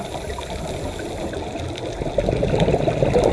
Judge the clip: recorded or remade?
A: recorded